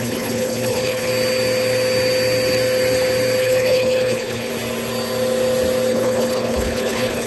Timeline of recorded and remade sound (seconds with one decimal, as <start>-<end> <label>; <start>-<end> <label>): 0.0-1.1 remade; 1.1-3.4 recorded; 3.4-4.5 remade; 4.5-5.9 recorded; 5.9-7.3 remade